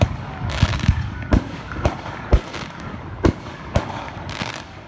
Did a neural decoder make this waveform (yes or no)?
yes